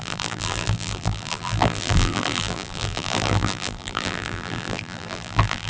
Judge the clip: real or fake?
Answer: fake